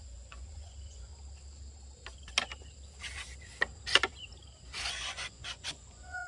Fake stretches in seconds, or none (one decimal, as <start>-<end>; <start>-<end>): 0.0-1.1; 4.9-6.3